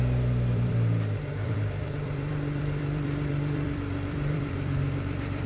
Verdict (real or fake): fake